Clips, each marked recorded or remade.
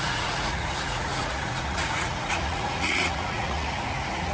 remade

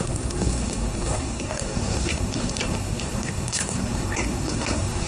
remade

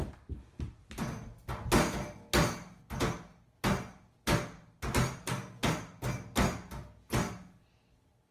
recorded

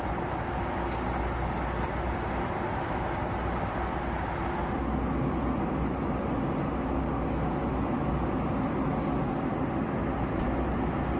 recorded